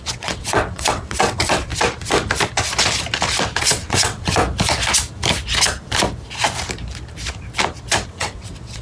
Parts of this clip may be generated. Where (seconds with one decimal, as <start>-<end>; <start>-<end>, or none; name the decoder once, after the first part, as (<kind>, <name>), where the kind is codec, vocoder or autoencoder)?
0.0-1.7 (vocoder, WaveNeXt); 3.6-4.4; 8.1-8.8